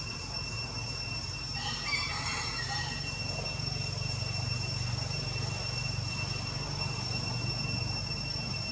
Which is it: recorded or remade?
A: recorded